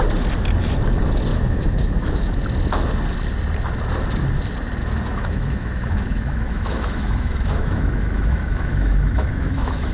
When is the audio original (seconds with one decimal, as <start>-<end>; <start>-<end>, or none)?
0.0-1.3; 2.3-4.8